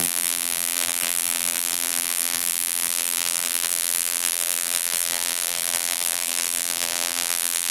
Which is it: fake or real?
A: fake